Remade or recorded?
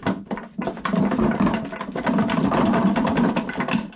recorded